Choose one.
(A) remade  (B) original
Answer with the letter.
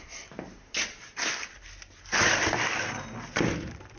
B